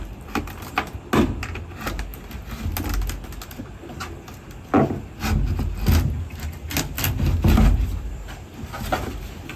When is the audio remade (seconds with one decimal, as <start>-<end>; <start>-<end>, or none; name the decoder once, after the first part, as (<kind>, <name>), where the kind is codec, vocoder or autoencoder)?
none